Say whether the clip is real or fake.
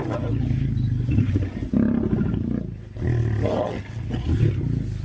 real